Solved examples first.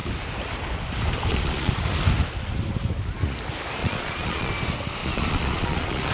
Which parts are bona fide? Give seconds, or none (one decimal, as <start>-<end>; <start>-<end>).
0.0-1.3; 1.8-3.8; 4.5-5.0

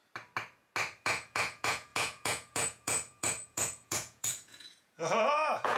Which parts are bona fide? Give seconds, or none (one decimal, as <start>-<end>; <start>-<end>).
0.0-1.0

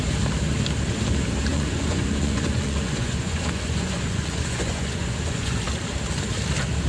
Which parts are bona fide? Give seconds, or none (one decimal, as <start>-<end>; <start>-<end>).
0.0-1.5; 5.6-6.9

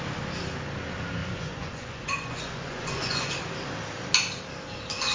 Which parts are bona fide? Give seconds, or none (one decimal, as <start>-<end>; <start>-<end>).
0.0-1.2; 3.3-5.1